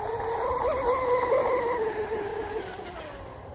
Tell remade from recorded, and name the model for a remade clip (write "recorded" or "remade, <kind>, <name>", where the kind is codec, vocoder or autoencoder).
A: recorded